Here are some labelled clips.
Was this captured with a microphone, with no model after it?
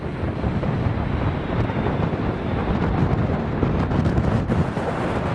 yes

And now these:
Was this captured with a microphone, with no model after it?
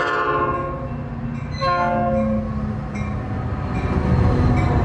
yes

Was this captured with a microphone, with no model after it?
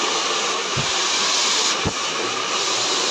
yes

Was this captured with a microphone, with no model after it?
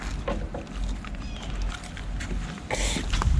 yes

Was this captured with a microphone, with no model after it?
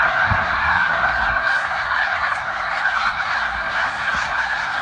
no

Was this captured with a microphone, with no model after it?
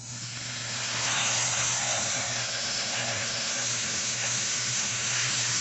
no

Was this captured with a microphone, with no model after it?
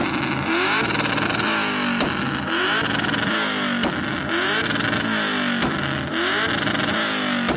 yes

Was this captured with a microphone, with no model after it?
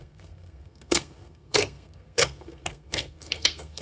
no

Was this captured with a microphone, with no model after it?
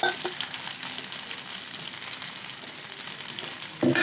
yes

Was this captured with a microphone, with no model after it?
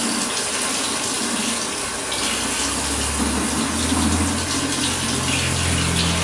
yes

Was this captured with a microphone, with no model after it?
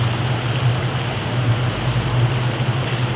yes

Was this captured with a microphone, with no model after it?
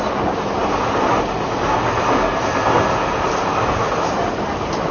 yes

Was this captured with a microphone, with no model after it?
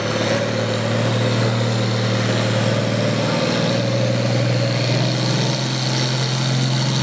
yes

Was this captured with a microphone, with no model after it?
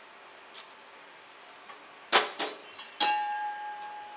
yes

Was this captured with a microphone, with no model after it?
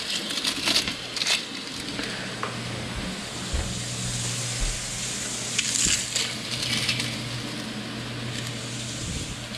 yes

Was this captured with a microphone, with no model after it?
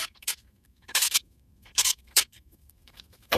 no